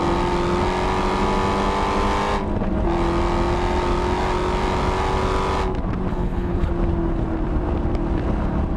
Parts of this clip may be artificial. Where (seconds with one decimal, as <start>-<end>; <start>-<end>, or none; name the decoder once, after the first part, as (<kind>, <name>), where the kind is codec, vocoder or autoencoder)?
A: 6.1-6.7 (codec, HILCodec)